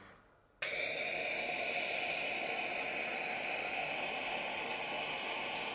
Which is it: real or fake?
real